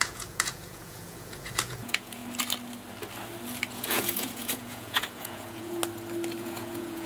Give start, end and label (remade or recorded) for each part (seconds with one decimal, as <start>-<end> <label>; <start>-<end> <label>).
0.0-2.2 remade; 2.2-3.7 recorded; 3.7-5.8 remade; 5.8-6.4 recorded; 6.4-7.1 remade